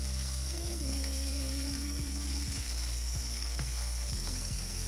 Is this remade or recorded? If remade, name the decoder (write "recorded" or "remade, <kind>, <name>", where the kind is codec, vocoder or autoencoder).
remade, codec, SNAC